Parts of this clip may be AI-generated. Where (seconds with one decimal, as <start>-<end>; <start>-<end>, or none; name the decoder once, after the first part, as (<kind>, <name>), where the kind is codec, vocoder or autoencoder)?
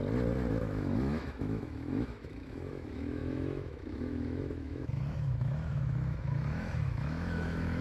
0.5-7.8 (autoencoder, DAC-VAE)